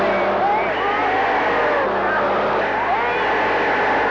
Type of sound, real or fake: real